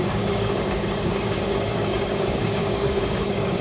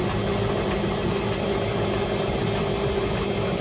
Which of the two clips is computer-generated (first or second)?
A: first